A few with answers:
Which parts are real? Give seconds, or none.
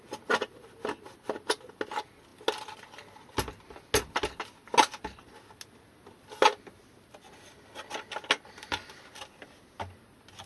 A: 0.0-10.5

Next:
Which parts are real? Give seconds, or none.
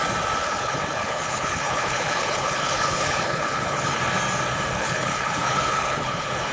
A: 0.0-0.4; 4.0-4.7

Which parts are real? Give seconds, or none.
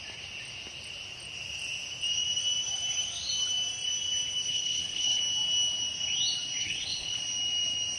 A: 0.0-4.5; 5.2-6.6; 7.2-8.0